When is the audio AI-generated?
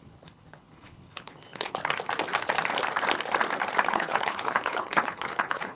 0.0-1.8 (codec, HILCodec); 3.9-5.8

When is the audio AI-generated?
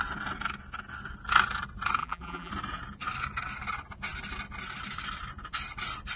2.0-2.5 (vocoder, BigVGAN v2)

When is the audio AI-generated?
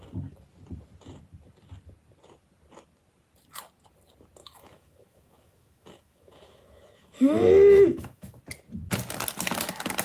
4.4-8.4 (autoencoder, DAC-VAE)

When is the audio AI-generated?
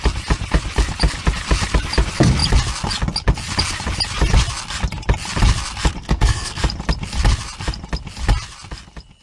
6.0-6.6 (codec, SNAC)